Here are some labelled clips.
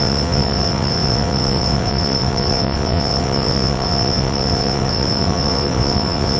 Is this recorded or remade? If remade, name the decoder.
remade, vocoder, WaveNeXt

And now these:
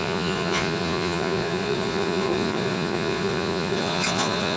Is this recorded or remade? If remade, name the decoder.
remade, vocoder, Vocos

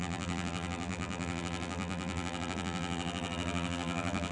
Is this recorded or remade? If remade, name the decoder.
remade, vocoder, BigVGAN v2